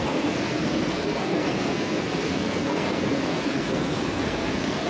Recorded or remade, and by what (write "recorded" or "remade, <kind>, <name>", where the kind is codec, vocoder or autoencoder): remade, codec, SNAC